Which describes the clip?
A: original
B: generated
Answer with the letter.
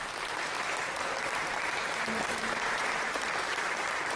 B